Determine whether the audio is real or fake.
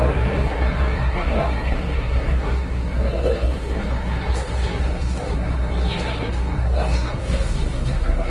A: fake